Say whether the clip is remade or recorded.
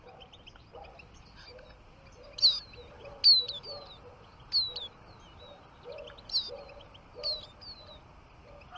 recorded